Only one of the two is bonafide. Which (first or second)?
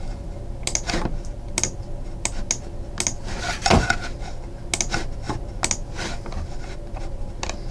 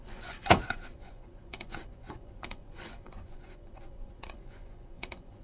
first